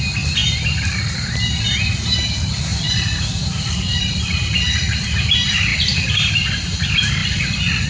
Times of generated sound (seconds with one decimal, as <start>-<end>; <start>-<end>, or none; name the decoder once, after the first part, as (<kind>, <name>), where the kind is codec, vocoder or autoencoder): 0.4-1.6 (vocoder, BigVGAN v2); 2.7-4.1; 5.7-6.3; 7.2-7.9